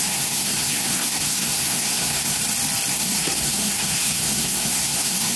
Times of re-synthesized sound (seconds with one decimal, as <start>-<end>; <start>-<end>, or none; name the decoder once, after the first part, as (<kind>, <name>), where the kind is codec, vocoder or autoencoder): 0.0-2.4 (codec, SNAC); 2.9-5.4